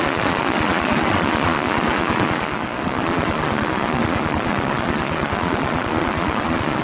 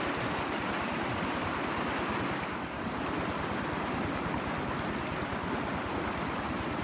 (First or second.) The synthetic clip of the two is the first